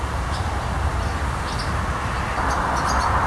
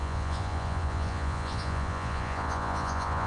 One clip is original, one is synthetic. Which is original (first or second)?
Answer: first